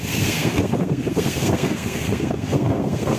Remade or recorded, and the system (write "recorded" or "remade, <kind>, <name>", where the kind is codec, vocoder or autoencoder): remade, codec, SNAC